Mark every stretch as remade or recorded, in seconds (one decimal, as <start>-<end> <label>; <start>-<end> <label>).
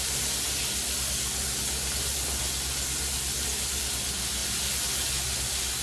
0.0-5.8 recorded